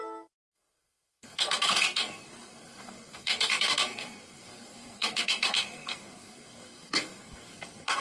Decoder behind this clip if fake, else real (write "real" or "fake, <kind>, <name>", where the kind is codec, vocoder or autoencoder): fake, codec, SNAC